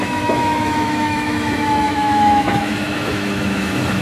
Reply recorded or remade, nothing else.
remade